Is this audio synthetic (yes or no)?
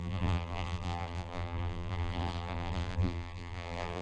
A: yes